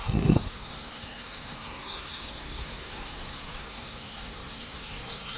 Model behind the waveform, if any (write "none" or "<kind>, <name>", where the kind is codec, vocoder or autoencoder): codec, SNAC